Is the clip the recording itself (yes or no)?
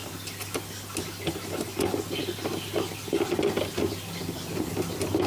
yes